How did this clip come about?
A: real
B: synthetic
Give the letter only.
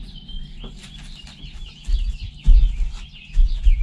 A